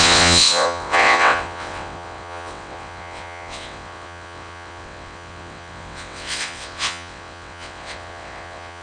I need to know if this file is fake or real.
fake